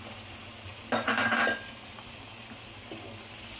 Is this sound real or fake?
real